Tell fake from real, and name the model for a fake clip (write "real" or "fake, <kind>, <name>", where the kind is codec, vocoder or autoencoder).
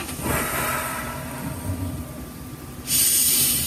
fake, vocoder, BigVGAN v2